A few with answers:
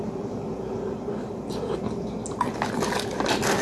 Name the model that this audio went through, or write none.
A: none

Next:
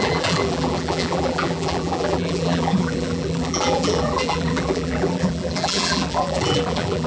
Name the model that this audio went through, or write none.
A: vocoder, BigVGAN v2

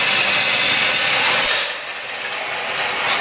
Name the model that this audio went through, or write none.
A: none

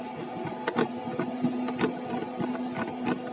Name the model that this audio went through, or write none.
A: none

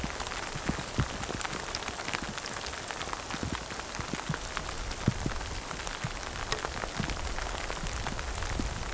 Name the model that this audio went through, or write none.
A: none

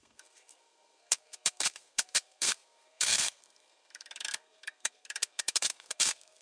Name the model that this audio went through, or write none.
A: codec, SNAC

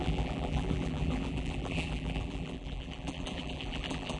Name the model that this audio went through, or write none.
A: vocoder, BigVGAN v2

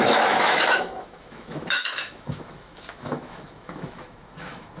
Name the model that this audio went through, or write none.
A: autoencoder, DAC-VAE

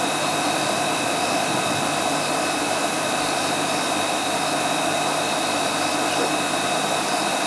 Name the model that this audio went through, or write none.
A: none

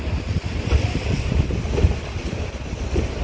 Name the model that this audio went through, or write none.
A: none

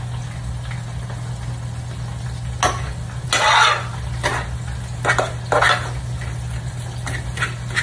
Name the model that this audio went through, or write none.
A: none